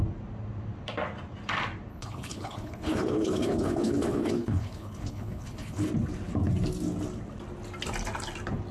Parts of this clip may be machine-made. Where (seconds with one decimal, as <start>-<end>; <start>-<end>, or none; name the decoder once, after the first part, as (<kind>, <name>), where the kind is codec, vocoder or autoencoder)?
1.9-5.9 (codec, HILCodec)